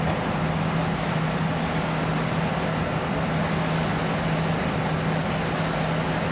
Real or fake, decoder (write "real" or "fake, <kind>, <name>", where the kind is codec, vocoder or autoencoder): real